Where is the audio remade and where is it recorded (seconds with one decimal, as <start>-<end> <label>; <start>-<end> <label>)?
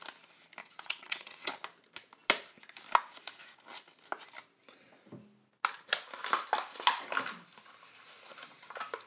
0.0-0.6 recorded; 0.6-1.5 remade; 1.5-9.1 recorded